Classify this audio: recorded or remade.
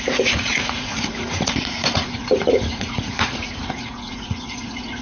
remade